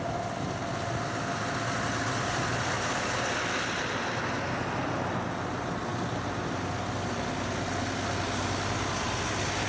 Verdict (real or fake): real